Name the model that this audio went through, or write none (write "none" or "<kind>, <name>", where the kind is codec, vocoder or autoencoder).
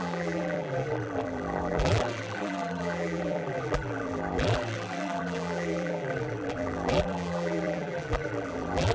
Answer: vocoder, BigVGAN v2